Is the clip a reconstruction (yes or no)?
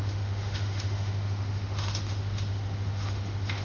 yes